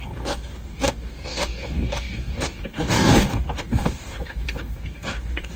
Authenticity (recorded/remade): remade